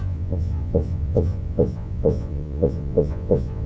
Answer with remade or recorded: remade